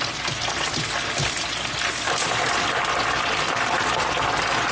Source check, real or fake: real